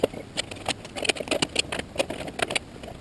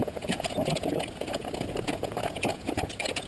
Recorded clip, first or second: first